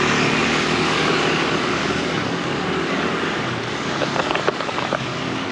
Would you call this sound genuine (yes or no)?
no